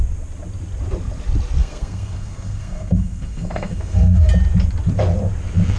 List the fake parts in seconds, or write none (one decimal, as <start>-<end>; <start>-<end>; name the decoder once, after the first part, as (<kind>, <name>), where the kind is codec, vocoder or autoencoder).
1.6-4.3 (codec, SNAC)

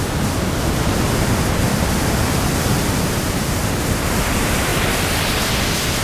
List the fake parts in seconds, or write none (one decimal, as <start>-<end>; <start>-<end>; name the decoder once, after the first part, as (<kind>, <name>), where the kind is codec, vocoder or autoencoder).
none

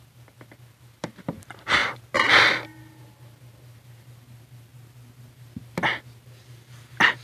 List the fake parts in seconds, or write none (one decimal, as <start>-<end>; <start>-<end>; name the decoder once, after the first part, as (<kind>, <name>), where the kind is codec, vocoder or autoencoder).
0.0-1.8 (vocoder, BigVGAN v2); 2.3-4.7; 5.3-7.2

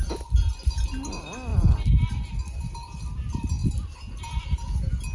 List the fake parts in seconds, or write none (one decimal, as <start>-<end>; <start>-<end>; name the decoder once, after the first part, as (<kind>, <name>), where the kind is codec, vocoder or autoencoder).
1.5-2.1 (vocoder, BigVGAN v2); 3.6-4.4

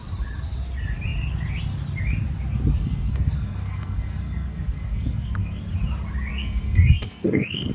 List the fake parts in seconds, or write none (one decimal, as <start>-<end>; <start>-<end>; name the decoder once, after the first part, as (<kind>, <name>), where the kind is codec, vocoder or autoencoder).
2.7-5.6 (codec, SNAC); 6.3-7.7

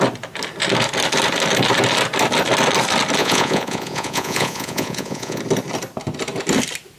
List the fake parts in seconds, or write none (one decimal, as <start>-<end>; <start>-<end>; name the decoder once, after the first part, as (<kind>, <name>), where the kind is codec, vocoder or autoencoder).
3.2-5.4 (vocoder, Vocos)

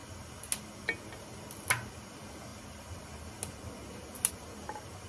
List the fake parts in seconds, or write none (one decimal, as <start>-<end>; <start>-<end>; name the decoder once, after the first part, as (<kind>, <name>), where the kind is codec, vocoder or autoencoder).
none